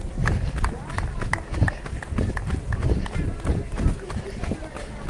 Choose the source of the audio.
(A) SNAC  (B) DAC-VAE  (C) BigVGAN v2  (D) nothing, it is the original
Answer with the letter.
D